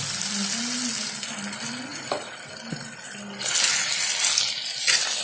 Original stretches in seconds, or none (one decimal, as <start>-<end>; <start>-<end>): 0.0-5.2